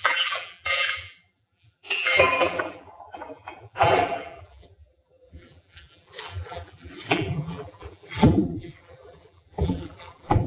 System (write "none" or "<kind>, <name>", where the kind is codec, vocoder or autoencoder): vocoder, BigVGAN v2